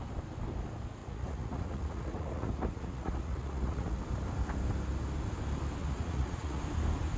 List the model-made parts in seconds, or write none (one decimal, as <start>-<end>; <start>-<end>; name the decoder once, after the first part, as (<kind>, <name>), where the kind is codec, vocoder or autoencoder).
1.0-4.0 (vocoder, Vocos); 5.8-6.6